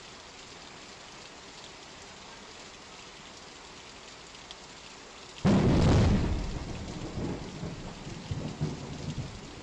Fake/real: real